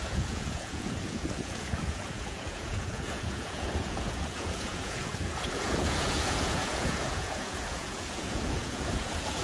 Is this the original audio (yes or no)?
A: no